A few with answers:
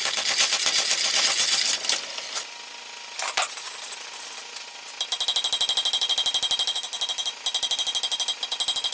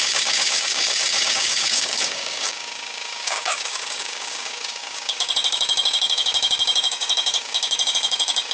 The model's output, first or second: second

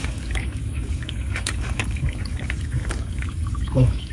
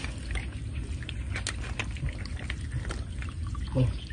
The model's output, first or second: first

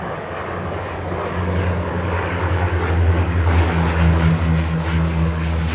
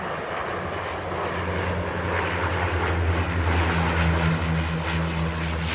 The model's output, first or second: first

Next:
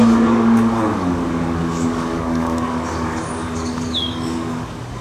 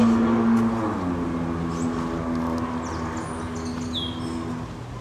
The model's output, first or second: first